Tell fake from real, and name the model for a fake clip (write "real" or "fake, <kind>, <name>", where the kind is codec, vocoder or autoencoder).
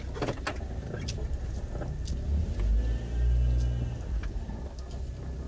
real